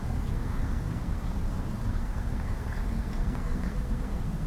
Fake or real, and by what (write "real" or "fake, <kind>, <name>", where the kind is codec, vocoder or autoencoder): fake, codec, SNAC